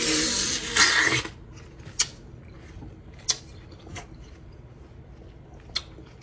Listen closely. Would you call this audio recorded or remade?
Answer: recorded